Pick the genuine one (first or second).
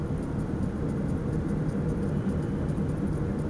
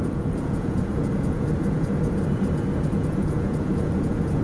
first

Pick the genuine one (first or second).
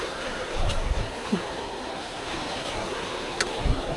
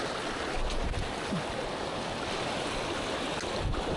second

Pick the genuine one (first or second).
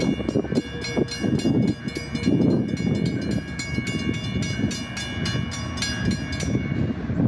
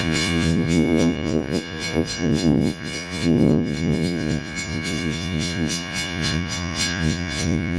first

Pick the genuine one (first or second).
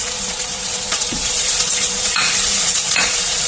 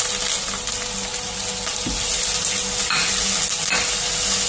second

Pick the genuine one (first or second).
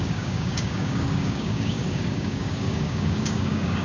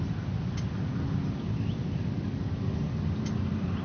second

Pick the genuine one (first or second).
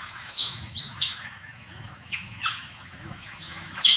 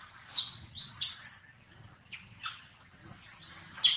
second